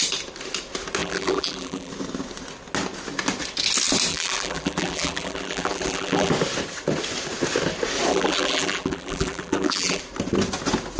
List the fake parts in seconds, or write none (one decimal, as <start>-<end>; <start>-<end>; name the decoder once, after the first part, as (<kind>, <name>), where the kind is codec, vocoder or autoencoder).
1.0-1.9 (vocoder, BigVGAN v2); 4.1-6.3; 8.1-10.0